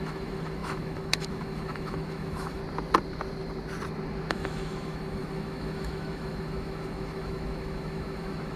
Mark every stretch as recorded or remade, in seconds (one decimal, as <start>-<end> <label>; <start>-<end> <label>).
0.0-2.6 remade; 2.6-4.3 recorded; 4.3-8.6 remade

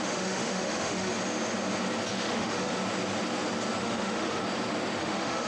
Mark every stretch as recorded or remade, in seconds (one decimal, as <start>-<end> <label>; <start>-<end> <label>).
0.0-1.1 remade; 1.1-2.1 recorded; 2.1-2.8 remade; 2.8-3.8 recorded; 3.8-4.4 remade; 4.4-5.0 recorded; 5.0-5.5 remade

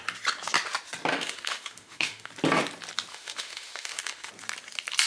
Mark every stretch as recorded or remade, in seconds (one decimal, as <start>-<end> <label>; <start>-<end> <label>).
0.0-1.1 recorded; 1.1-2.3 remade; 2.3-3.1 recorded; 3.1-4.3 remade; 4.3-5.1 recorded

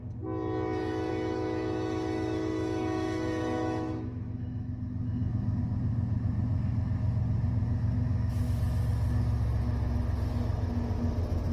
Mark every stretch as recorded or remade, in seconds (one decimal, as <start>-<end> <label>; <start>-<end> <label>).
0.0-1.1 recorded; 1.1-5.6 remade; 5.6-7.6 recorded; 7.6-8.3 remade; 8.3-11.5 recorded